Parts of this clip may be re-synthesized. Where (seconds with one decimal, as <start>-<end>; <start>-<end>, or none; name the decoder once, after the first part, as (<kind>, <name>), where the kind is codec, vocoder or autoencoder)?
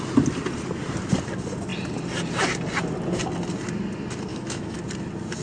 4.3-4.8 (autoencoder, DAC-VAE)